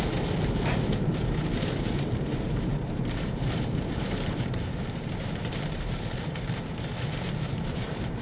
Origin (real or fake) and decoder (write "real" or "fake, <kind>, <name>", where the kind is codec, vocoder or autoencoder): fake, vocoder, BigVGAN v2